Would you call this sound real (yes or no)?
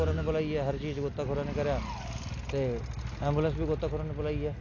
yes